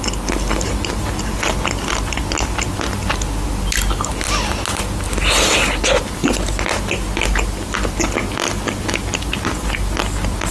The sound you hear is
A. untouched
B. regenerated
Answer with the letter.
A